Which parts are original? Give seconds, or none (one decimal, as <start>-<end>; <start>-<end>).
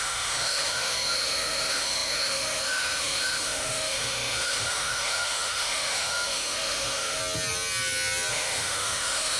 7.2-8.3